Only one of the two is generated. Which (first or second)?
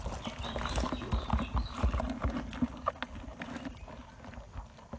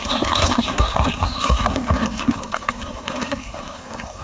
second